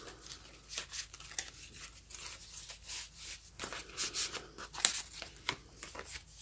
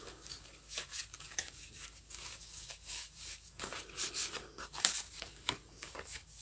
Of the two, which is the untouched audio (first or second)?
first